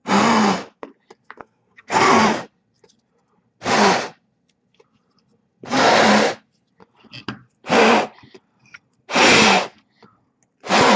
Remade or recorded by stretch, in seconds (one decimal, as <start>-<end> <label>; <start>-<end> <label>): 0.0-1.4 recorded; 1.4-2.1 remade; 2.1-11.0 recorded